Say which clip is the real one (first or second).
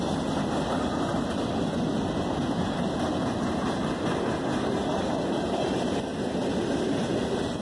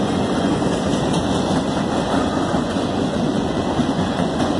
first